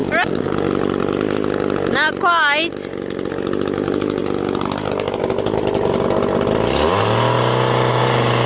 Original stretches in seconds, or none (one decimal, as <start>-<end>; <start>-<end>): 0.0-8.5